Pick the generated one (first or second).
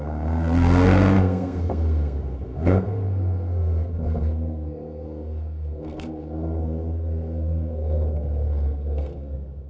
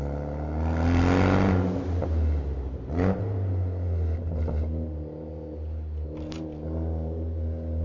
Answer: first